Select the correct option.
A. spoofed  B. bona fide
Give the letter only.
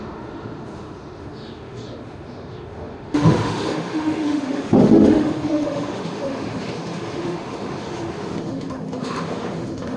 A